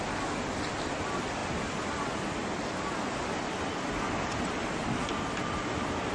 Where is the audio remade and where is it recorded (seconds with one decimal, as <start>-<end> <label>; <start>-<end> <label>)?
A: 0.0-6.1 recorded

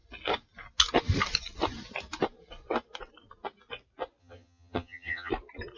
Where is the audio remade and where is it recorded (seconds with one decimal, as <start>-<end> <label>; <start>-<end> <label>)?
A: 0.0-4.2 recorded; 4.2-5.3 remade; 5.3-5.8 recorded

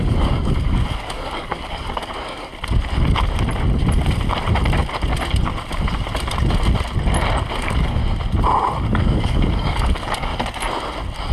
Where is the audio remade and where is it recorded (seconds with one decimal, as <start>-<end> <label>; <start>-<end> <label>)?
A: 0.0-2.5 remade; 2.5-7.6 recorded; 7.6-8.0 remade; 8.0-8.9 recorded; 8.9-10.3 remade; 10.3-11.3 recorded

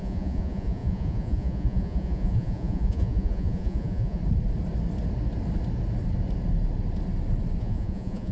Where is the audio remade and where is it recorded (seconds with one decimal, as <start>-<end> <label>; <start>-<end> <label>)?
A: 0.0-4.2 remade; 4.2-7.6 recorded; 7.6-8.3 remade

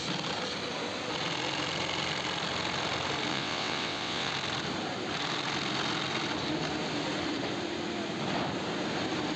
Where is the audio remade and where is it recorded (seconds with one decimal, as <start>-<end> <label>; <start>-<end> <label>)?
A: 0.0-3.3 recorded; 3.3-4.3 remade; 4.3-9.4 recorded

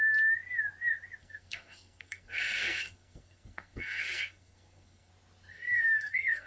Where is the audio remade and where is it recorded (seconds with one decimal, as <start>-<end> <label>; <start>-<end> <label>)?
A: 0.0-1.2 recorded; 1.2-5.1 remade; 5.1-5.5 recorded; 5.5-6.5 remade

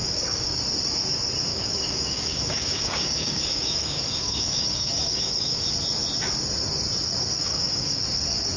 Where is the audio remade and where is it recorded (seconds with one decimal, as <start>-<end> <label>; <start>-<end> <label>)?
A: 0.0-0.6 remade; 0.6-1.5 recorded; 1.5-5.7 remade; 5.7-7.4 recorded; 7.4-8.0 remade; 8.0-8.6 recorded